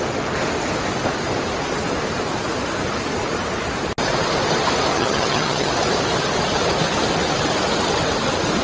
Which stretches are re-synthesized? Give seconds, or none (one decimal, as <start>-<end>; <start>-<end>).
4.9-5.7